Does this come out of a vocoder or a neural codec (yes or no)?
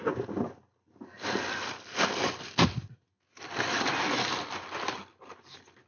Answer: no